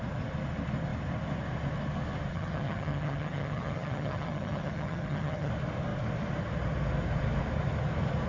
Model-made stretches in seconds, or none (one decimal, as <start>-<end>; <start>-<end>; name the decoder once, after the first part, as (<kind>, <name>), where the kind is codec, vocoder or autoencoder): 2.3-5.5 (vocoder, HiFi-GAN)